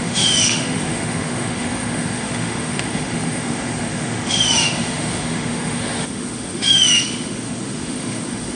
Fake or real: fake